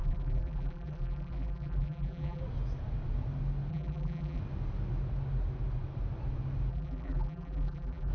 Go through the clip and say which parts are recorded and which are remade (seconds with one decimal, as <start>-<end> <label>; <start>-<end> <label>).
0.0-2.4 remade; 2.4-3.7 recorded; 3.7-4.4 remade; 4.4-6.7 recorded; 6.7-8.1 remade